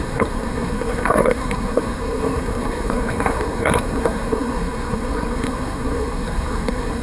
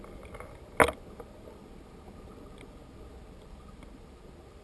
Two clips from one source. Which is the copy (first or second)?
first